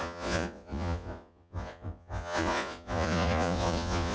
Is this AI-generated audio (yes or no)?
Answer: yes